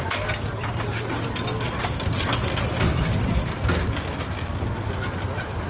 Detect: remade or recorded recorded